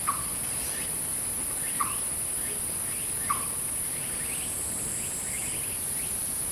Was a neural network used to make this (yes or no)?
no